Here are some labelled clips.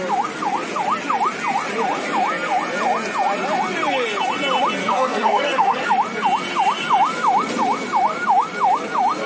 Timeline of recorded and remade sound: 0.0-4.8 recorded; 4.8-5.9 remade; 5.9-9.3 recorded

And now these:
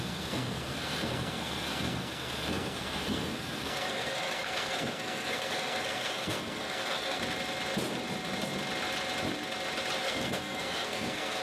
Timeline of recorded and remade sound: 0.0-7.2 remade; 7.2-10.0 recorded; 10.0-11.4 remade

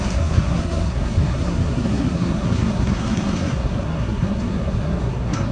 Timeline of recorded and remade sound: 0.0-5.5 remade

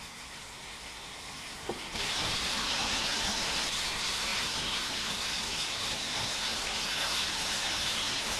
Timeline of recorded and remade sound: 0.0-8.4 remade

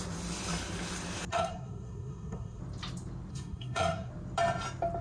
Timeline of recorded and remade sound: 0.0-1.3 recorded; 1.3-2.6 remade; 2.6-3.3 recorded; 3.3-4.1 remade; 4.1-5.0 recorded

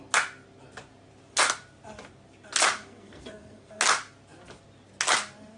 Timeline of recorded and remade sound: 0.0-2.8 recorded; 2.8-3.8 remade; 3.8-5.6 recorded

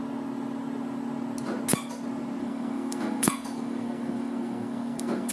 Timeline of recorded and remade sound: 0.0-2.4 recorded; 2.4-5.3 remade